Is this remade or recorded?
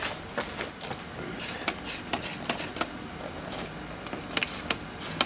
recorded